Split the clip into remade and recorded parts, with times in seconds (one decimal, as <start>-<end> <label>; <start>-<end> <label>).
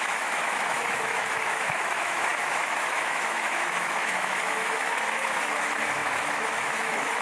0.0-7.2 remade